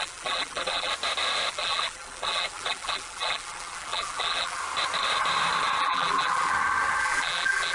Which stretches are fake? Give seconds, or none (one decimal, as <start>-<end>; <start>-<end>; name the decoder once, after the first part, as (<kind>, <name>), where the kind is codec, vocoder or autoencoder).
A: 0.0-0.9 (vocoder, BigVGAN v2); 1.5-4.6; 5.8-6.5; 7.0-7.7